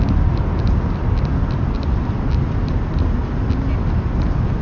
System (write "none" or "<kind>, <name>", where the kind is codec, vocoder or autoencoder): none